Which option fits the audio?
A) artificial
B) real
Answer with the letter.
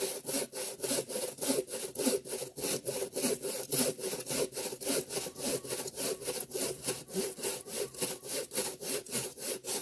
B